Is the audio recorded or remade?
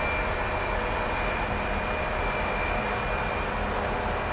recorded